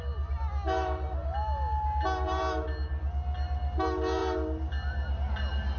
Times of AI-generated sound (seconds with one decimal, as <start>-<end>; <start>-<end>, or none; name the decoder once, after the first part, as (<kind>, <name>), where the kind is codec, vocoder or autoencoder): none